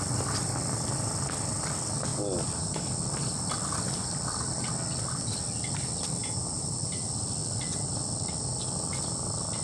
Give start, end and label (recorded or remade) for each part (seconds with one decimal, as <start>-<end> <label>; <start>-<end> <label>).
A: 0.0-2.1 recorded; 2.1-2.7 remade; 2.7-6.2 recorded; 6.2-6.9 remade; 6.9-9.6 recorded